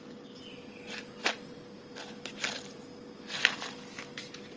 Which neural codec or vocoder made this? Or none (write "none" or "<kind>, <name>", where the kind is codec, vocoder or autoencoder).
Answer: none